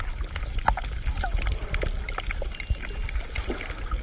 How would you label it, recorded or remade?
recorded